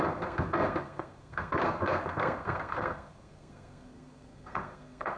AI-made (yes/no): yes